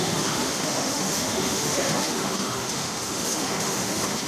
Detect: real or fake fake